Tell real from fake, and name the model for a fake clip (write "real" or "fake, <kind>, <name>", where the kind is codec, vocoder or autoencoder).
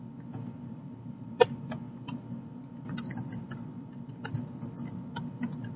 fake, vocoder, BigVGAN v2